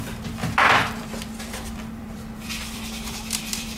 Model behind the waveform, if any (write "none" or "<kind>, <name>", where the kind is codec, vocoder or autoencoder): vocoder, BigVGAN v2